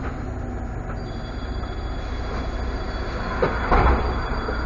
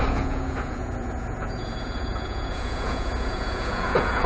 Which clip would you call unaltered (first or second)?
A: first